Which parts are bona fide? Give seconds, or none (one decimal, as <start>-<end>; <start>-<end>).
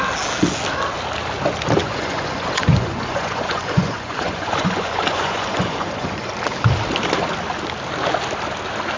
0.0-1.8; 6.3-9.0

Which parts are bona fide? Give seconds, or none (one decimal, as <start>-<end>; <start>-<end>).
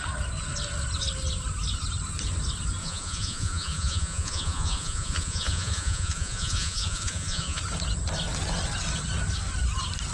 0.0-2.8; 7.6-10.1